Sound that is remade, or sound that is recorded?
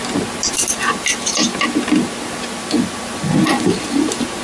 recorded